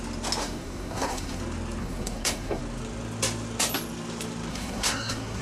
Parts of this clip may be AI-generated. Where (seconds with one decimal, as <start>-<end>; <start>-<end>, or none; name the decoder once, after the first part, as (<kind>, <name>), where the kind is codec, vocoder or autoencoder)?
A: 0.4-1.4 (codec, SNAC); 1.8-2.6; 4.5-5.4